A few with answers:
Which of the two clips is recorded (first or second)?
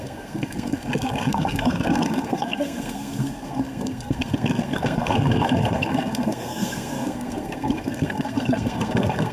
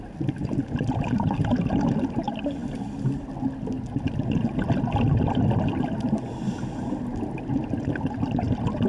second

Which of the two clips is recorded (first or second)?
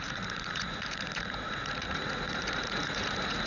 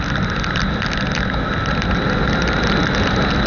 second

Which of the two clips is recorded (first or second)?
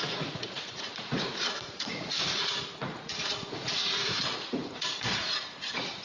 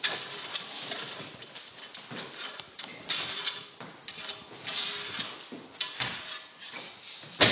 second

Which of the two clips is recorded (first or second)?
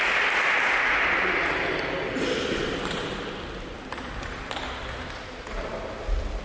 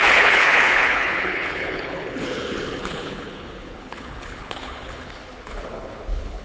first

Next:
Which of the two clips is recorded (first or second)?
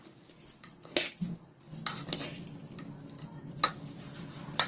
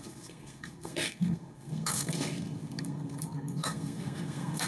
first